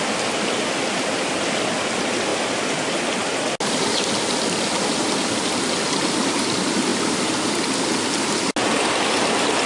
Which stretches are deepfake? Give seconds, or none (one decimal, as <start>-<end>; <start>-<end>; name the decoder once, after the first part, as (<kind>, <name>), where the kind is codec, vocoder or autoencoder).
none